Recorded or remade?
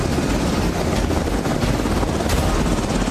recorded